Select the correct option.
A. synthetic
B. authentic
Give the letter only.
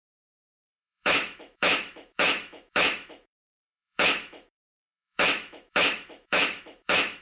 A